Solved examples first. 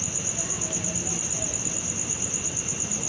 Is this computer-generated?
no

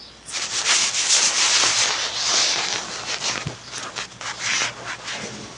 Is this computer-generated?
no